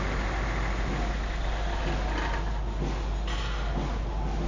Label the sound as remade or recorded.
recorded